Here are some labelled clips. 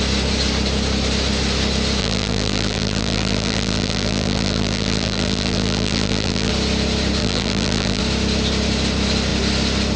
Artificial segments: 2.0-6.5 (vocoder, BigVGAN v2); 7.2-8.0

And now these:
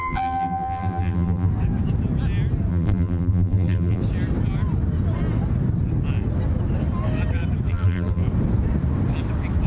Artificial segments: 0.0-1.5 (vocoder, BigVGAN v2); 2.7-4.0; 7.7-8.2

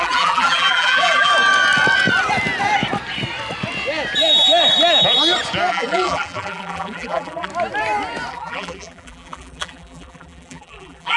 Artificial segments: 0.0-1.3 (vocoder, BigVGAN v2); 5.7-7.5; 8.3-11.2

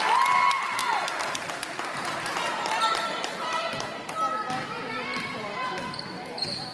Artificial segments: 0.8-3.6 (vocoder, BigVGAN v2)

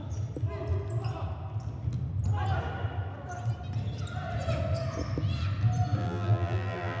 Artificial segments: 6.0-7.0 (vocoder, BigVGAN v2)

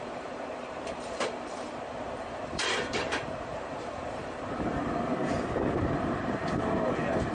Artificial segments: 0.0-5.2 (vocoder, BigVGAN v2); 5.7-7.3

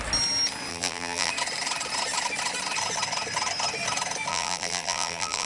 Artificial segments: 0.7-1.3 (vocoder, BigVGAN v2); 4.3-5.5

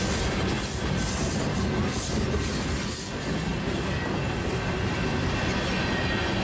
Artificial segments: 3.5-4.9 (vocoder, BigVGAN v2)